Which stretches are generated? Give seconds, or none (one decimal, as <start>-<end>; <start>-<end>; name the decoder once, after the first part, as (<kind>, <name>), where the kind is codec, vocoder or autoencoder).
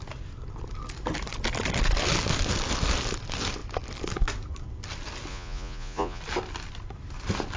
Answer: 5.3-6.2 (vocoder, Vocos)